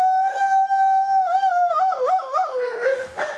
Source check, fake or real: fake